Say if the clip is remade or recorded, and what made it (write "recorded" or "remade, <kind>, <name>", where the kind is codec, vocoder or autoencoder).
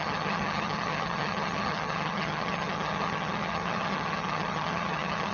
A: remade, vocoder, HiFi-GAN